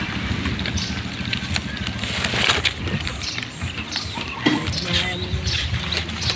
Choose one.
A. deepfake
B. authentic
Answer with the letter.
B